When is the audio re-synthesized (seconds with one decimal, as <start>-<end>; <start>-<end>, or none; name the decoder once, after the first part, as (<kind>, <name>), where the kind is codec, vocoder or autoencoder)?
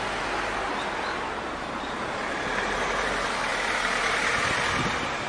none